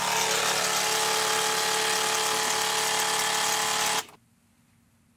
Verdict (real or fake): real